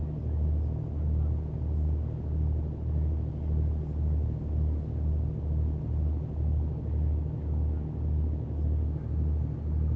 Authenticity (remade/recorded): recorded